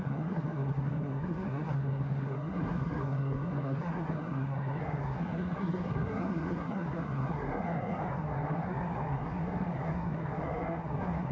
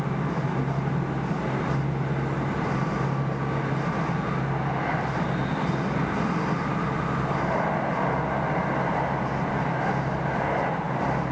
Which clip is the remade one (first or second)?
first